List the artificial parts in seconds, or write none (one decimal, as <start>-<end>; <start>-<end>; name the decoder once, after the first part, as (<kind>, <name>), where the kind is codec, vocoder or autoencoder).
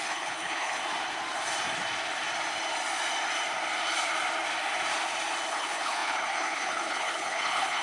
0.0-0.8 (codec, HILCodec); 5.5-7.8